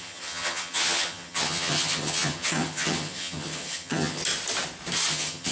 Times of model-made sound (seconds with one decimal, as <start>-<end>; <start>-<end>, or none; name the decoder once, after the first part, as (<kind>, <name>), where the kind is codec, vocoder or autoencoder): 0.0-4.2 (vocoder, HiFi-GAN); 5.1-5.5

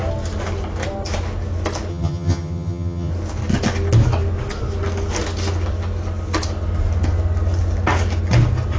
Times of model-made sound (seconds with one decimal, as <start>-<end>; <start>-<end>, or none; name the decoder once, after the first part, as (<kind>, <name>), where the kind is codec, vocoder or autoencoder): 1.9-3.1 (vocoder, HiFi-GAN)

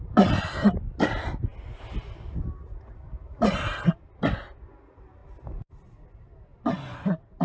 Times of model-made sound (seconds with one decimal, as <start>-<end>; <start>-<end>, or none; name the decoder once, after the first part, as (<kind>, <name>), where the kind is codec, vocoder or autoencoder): none

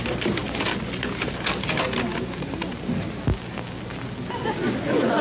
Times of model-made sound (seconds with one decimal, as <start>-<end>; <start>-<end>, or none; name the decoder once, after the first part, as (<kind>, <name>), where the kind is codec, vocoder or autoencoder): none

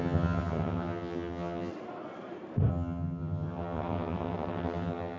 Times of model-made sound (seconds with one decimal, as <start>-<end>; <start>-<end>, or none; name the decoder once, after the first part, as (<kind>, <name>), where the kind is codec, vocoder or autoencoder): 0.0-1.7 (vocoder, HiFi-GAN); 2.7-5.2